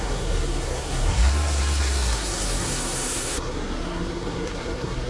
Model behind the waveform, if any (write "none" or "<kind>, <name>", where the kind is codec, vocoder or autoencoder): codec, SNAC